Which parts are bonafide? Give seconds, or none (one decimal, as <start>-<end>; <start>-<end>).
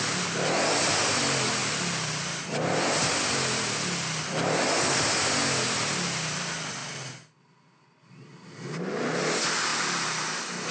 0.0-1.6; 2.4-9.7